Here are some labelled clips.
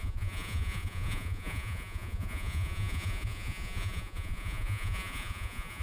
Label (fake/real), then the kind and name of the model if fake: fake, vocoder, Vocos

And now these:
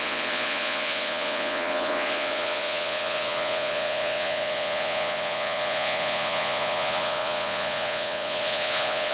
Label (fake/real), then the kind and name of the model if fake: fake, vocoder, Vocos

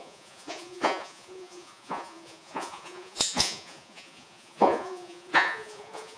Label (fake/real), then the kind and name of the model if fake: fake, vocoder, Vocos